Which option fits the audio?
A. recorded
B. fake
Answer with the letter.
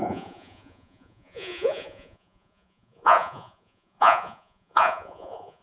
B